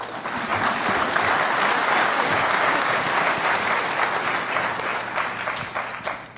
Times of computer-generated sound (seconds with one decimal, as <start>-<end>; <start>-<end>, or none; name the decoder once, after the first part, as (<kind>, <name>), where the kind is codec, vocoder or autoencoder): 2.0-3.7 (codec, DAC)

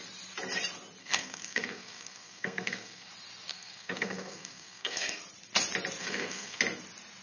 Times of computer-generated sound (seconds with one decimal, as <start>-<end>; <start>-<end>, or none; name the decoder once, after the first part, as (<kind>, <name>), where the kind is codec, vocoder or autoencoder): 1.0-3.1 (codec, SNAC); 3.5-5.2; 6.0-6.6

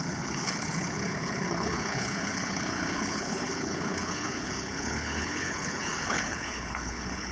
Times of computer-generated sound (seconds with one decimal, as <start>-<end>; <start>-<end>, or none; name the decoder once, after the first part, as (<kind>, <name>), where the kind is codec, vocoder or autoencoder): 0.0-7.3 (codec, HILCodec)

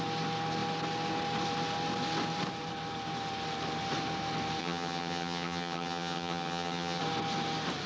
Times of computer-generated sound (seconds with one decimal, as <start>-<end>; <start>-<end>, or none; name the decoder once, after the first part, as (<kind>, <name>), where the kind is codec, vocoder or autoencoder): 4.6-7.0 (vocoder, HiFi-GAN)